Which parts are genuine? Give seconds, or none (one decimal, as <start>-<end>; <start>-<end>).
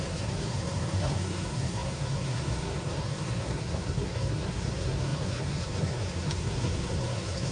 none